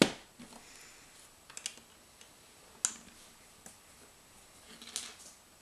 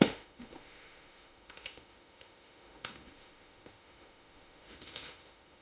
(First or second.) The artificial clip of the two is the second